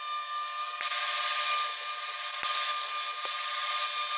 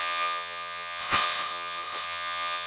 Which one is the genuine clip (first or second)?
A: first